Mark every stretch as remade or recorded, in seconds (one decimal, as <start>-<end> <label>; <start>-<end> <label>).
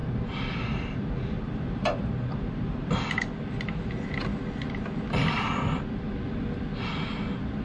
0.0-3.0 remade; 3.0-7.6 recorded